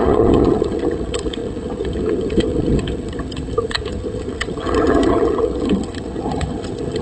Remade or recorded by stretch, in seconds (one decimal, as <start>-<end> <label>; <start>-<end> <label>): 0.0-7.0 remade